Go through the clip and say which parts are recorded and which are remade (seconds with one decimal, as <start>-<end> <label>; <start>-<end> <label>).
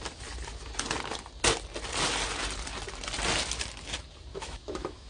0.0-4.3 recorded; 4.3-5.1 remade